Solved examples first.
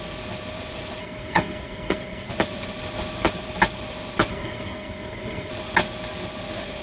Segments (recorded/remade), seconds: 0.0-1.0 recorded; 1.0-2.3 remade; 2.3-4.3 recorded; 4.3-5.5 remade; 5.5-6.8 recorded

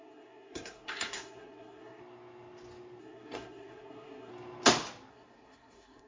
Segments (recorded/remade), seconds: 0.0-2.0 remade; 2.0-3.0 recorded; 3.0-4.3 remade; 4.3-5.1 recorded; 5.1-6.1 remade

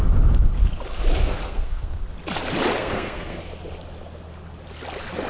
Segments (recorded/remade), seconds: 0.0-1.2 recorded; 1.2-2.0 remade; 2.0-2.8 recorded; 2.8-3.4 remade; 3.4-5.3 recorded

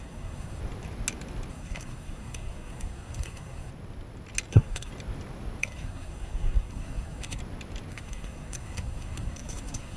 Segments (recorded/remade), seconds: 0.0-0.6 remade; 0.6-1.5 recorded; 1.5-3.7 remade; 3.7-4.5 recorded; 4.5-4.9 remade; 4.9-5.6 recorded; 5.6-7.4 remade; 7.4-7.9 recorded; 7.9-10.0 remade

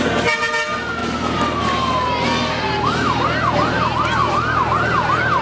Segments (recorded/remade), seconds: 0.0-5.4 recorded

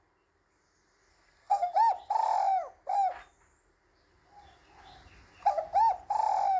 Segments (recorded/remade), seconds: 0.0-1.1 recorded; 1.1-1.7 remade; 1.7-6.6 recorded